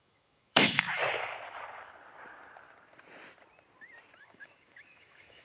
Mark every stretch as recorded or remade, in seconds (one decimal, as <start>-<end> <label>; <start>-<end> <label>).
0.0-1.0 remade; 1.0-4.2 recorded; 4.2-5.4 remade